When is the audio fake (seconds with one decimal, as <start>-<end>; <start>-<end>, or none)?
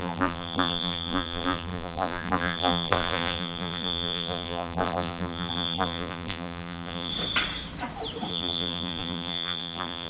0.0-7.1; 8.3-10.1